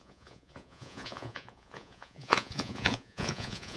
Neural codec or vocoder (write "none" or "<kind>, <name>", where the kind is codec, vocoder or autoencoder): vocoder, Vocos